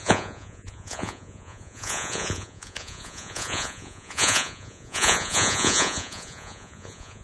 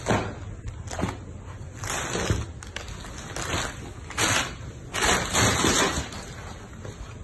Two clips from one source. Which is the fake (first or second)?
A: first